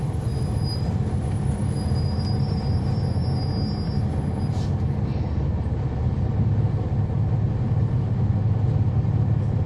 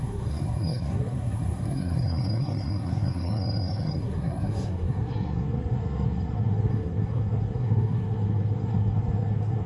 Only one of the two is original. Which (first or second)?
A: first